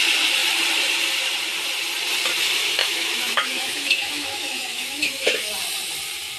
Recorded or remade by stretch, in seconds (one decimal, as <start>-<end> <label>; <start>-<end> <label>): 0.0-2.8 recorded; 2.8-5.5 remade; 5.5-6.4 recorded